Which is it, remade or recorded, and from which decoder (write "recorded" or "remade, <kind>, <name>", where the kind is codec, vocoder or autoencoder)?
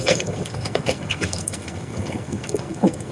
remade, codec, SNAC